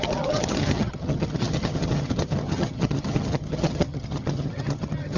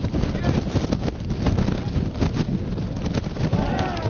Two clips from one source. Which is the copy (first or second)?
first